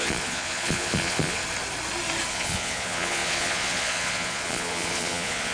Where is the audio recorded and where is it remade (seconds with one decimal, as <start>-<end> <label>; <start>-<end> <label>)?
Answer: 0.0-1.4 remade; 1.4-2.3 recorded; 2.3-5.5 remade